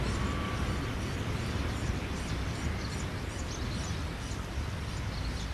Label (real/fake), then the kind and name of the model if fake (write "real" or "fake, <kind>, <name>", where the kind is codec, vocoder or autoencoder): real